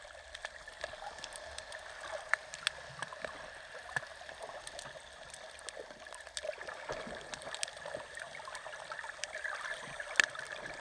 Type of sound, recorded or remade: recorded